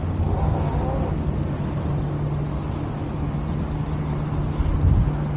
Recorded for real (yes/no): yes